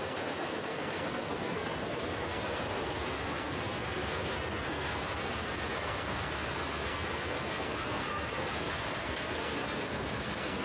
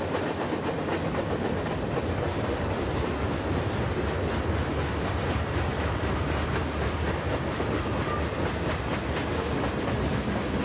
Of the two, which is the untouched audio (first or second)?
second